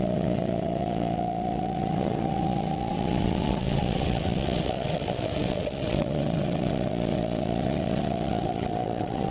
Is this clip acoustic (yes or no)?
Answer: no